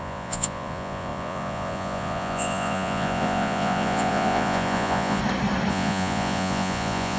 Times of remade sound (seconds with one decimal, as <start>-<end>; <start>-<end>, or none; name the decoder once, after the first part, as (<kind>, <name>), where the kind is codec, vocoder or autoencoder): 0.0-5.2 (vocoder, Vocos); 5.7-7.2

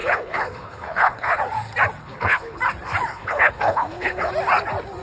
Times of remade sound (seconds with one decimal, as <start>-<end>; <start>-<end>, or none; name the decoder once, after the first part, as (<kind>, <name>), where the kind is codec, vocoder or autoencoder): 0.0-1.4 (codec, HILCodec); 2.0-2.6; 3.1-4.3

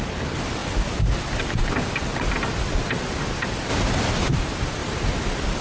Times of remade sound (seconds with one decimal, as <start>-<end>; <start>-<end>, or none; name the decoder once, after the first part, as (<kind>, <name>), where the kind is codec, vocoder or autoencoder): none

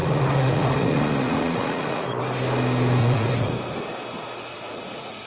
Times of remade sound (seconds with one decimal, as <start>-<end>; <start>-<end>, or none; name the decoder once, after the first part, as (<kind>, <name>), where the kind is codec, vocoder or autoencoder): 0.0-2.2 (vocoder, Vocos); 3.0-3.5; 4.5-5.3

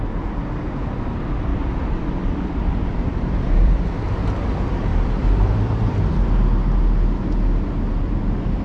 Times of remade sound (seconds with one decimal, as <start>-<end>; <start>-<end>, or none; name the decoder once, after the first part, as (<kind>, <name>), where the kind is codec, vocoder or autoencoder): 1.5-4.1 (vocoder, BigVGAN v2); 4.9-6.3